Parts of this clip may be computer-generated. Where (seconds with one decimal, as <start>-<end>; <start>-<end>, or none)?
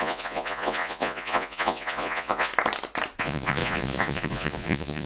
0.0-2.5; 3.2-5.1